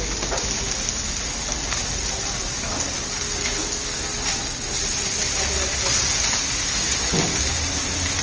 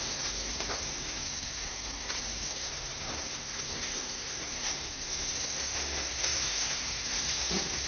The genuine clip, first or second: first